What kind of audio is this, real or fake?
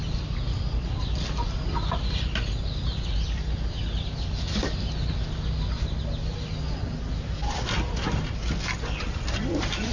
real